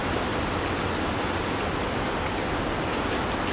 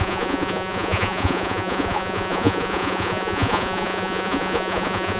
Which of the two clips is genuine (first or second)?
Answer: first